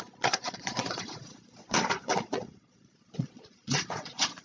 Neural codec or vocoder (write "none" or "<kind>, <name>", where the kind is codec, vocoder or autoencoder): vocoder, Vocos